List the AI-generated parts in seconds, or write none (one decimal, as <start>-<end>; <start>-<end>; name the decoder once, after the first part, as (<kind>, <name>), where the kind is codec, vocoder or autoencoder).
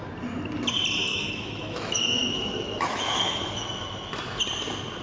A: 1.1-4.1 (autoencoder, DAC-VAE)